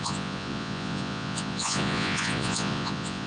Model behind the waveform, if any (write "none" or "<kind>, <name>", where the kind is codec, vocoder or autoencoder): vocoder, Vocos